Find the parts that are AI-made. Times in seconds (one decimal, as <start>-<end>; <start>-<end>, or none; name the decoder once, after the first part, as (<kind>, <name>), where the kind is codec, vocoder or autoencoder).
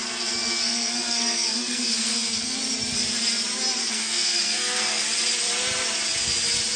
0.0-2.6 (codec, SNAC); 3.8-5.0